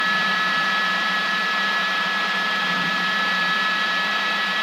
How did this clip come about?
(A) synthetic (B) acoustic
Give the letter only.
A